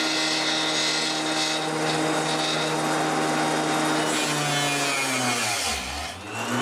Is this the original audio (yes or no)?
yes